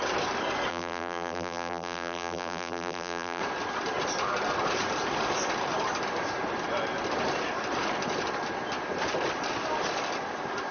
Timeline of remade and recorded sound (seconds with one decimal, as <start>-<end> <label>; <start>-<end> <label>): 0.0-0.7 recorded; 0.7-3.4 remade; 3.4-10.7 recorded